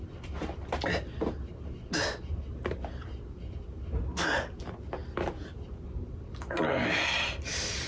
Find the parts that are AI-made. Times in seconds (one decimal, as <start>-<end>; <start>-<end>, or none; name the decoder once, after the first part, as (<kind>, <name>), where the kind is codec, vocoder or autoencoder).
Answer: none